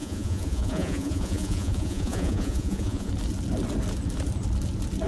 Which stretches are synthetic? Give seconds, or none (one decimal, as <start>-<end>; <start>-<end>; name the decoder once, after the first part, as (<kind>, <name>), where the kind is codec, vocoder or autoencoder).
0.0-3.1 (vocoder, Vocos)